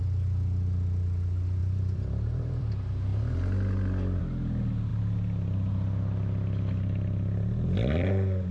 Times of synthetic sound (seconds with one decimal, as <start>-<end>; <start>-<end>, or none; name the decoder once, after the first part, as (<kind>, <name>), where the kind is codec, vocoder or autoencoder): 1.6-2.7 (vocoder, BigVGAN v2); 4.9-5.7